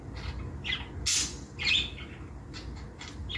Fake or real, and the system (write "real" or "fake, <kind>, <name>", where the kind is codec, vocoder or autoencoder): real